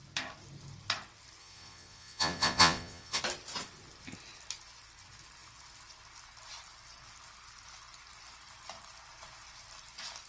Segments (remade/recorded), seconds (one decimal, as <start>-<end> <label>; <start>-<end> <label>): 0.0-1.4 recorded; 1.4-3.2 remade; 3.2-10.3 recorded